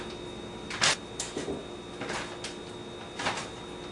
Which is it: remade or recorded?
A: recorded